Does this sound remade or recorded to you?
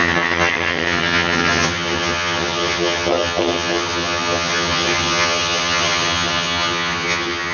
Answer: remade